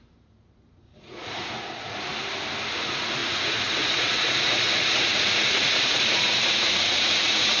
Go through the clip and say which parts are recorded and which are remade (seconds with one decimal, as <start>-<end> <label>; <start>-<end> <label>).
0.0-2.1 remade; 2.1-2.8 recorded; 2.8-7.6 remade